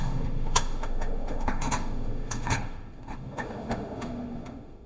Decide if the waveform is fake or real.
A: fake